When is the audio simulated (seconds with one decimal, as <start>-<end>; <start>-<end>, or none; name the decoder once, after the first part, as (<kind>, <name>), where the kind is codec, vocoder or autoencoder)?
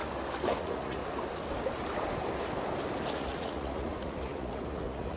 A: 0.6-1.0 (vocoder, Vocos); 3.1-5.2